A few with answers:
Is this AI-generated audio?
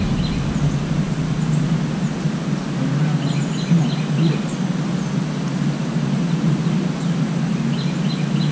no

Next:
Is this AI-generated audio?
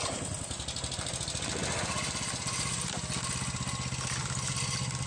no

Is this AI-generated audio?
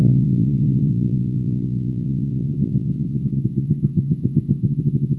yes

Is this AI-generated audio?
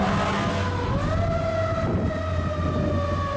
no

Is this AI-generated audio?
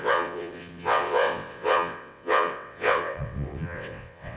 yes